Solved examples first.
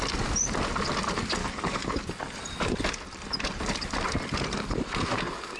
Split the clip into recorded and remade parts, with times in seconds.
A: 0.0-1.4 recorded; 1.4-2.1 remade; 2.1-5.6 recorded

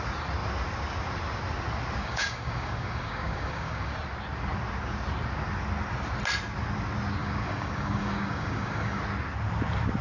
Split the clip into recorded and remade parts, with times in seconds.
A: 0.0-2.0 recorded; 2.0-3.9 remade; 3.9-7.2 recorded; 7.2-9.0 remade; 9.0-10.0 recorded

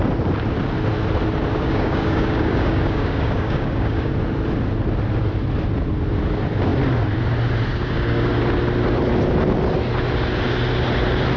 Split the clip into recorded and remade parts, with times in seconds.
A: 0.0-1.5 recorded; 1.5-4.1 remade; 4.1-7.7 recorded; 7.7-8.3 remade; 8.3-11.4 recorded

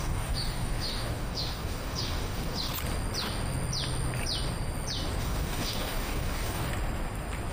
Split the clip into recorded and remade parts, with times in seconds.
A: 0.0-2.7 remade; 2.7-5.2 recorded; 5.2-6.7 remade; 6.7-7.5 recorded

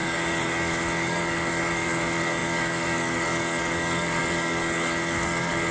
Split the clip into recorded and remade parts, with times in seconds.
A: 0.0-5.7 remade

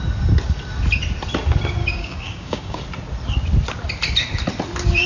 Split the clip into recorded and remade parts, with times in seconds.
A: 0.0-1.8 recorded; 1.8-2.8 remade; 2.8-5.1 recorded